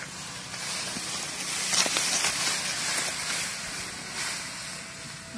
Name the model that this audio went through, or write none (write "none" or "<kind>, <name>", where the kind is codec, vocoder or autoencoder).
none